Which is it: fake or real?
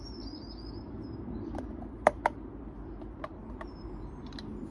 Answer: real